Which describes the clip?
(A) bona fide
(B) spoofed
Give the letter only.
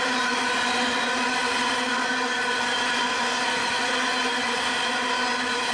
A